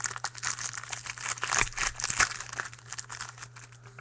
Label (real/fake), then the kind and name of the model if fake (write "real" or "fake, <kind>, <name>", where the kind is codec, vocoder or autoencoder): real